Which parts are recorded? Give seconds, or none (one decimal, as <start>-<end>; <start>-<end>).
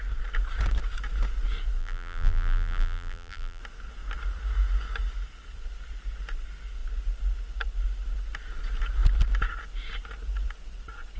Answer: 0.0-1.8; 3.6-11.2